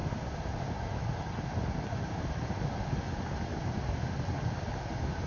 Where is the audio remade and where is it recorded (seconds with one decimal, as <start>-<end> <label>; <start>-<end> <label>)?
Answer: 0.0-5.3 recorded